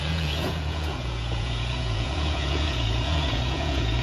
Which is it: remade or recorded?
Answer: remade